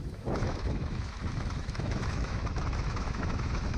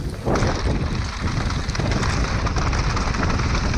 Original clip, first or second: second